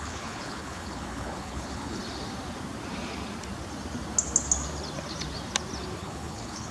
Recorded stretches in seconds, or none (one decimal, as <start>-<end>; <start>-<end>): 2.0-6.0